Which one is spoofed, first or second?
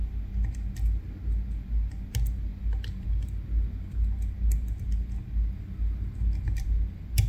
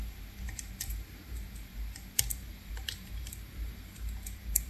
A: second